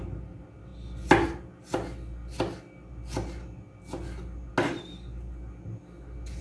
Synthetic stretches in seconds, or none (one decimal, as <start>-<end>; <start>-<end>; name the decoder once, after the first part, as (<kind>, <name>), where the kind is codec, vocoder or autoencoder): none